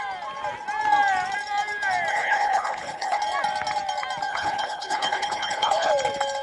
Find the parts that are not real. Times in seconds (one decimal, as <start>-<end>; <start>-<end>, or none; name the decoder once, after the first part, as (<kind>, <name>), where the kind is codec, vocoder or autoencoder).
2.1-3.2 (codec, HILCodec); 4.3-5.9